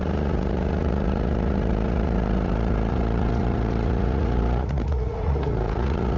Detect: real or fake fake